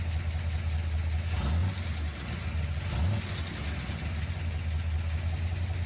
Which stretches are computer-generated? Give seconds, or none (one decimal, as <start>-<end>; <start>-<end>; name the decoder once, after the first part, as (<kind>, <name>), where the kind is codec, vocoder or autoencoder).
none